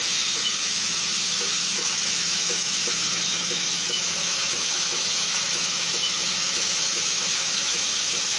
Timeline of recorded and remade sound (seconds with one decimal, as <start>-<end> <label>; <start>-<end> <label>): 0.0-8.4 remade